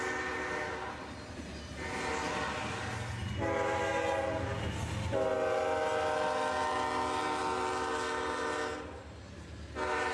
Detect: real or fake real